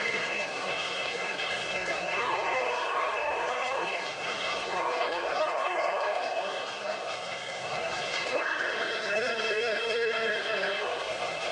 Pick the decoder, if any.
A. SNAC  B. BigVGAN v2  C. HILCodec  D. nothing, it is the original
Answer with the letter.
A